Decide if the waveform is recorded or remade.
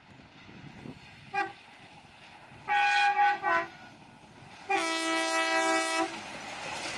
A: recorded